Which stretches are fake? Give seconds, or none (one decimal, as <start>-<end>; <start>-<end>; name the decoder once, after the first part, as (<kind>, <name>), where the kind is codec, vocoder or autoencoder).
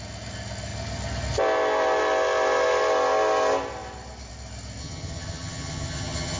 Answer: 4.8-6.4 (vocoder, HiFi-GAN)